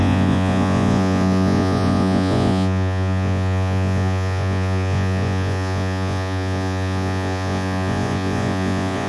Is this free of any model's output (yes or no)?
no